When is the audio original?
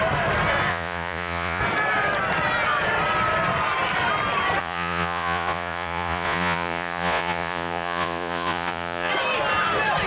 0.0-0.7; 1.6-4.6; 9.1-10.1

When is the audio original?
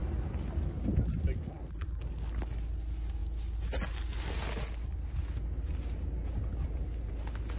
0.0-7.6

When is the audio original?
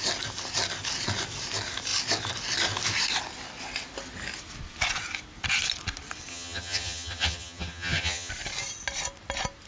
0.0-6.3; 8.3-9.7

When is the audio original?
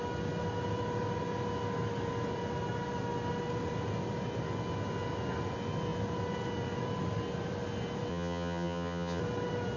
0.0-8.1; 9.2-9.8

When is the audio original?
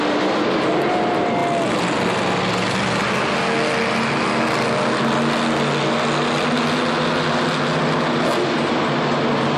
0.0-9.6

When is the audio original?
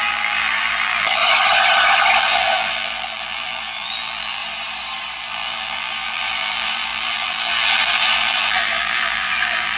1.2-2.2; 4.4-5.2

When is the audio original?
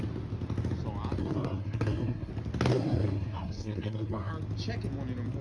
0.0-1.2; 2.3-2.7; 4.3-5.4